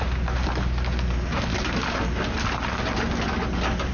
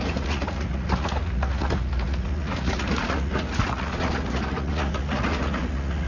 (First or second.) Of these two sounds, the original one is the first